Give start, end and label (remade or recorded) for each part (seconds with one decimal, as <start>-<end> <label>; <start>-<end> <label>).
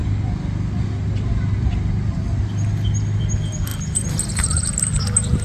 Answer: 0.0-3.7 recorded; 3.7-5.0 remade; 5.0-5.4 recorded